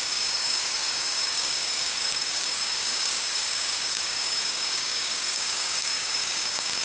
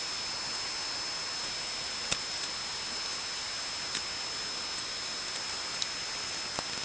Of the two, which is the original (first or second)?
second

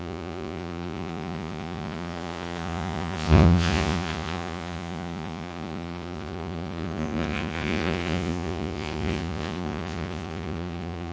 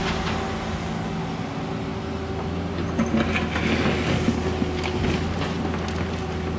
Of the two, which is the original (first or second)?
second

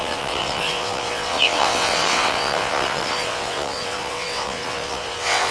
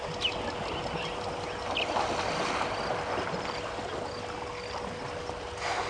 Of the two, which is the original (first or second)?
second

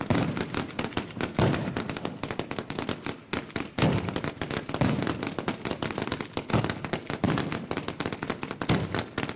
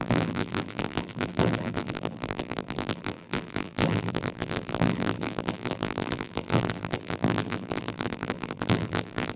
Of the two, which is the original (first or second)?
first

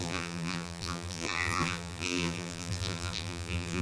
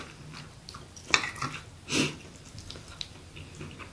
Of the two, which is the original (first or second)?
second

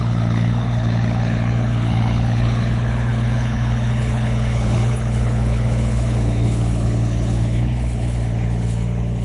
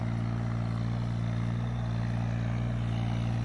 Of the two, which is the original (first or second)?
second